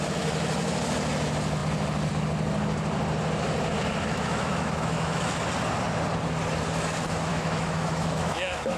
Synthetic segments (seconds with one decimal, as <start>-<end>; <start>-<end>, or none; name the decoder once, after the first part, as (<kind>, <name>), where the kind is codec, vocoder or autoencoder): 4.1-5.5 (autoencoder, DAC-VAE); 7.3-8.8